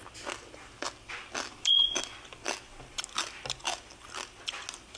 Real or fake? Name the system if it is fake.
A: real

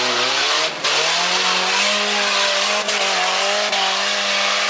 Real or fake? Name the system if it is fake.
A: real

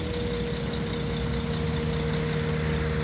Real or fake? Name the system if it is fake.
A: real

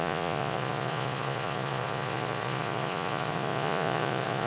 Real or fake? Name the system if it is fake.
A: fake, vocoder, Vocos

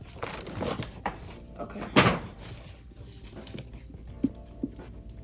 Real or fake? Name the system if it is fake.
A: real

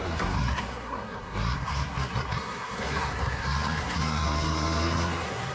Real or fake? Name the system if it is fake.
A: fake, codec, SNAC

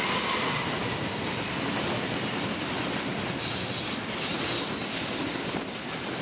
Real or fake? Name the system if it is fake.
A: real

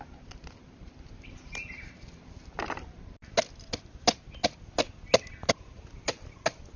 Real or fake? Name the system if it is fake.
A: real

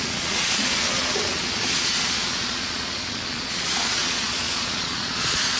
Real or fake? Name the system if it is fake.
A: fake, vocoder, Vocos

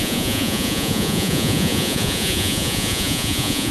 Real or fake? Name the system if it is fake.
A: fake, vocoder, Vocos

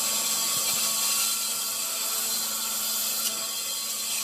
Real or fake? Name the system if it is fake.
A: real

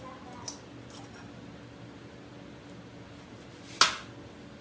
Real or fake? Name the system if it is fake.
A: real